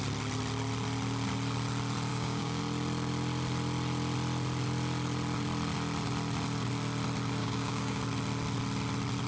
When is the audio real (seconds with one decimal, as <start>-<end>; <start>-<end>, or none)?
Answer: 0.0-2.1; 2.6-7.4; 8.0-9.3